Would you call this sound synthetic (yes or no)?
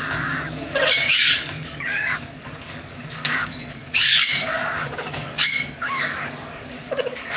yes